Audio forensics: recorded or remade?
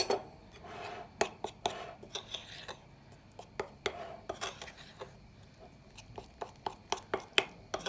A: recorded